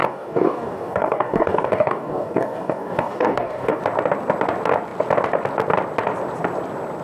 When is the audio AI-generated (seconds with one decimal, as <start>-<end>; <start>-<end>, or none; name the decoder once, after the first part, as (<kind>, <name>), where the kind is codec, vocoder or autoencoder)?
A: 0.0-3.8 (codec, DAC)